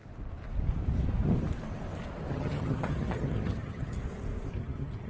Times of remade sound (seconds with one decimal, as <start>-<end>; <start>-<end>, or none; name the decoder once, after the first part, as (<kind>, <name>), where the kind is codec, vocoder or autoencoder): 2.3-4.0 (vocoder, HiFi-GAN); 4.5-5.1